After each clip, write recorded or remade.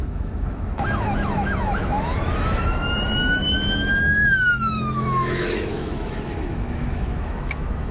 remade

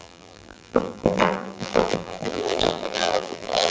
remade